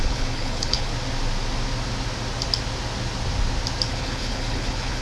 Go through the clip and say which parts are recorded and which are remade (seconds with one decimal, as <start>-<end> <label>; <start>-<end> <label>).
0.0-0.9 remade; 0.9-3.9 recorded; 3.9-5.0 remade